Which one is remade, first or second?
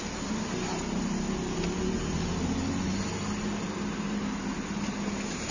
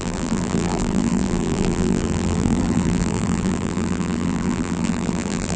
second